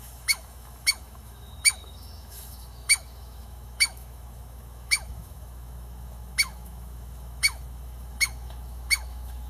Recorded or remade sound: remade